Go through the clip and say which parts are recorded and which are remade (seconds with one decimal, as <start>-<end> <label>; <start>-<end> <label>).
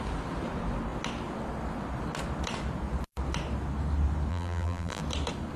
0.0-4.3 recorded; 4.3-5.0 remade; 5.0-5.6 recorded